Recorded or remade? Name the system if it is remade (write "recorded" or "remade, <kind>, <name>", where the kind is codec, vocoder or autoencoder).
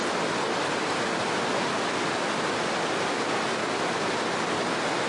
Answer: recorded